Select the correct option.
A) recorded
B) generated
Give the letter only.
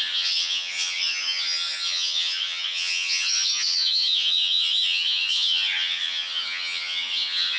B